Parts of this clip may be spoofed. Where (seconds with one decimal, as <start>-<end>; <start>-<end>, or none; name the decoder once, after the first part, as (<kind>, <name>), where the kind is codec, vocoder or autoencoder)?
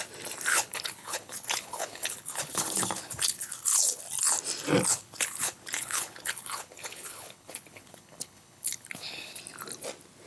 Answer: 0.5-4.0 (codec, HILCodec); 4.9-9.4